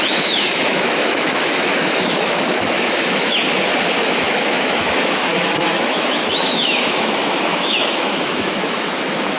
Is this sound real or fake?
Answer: fake